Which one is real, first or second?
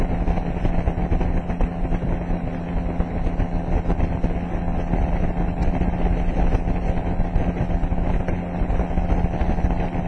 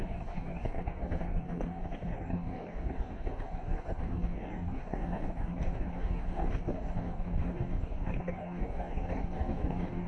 first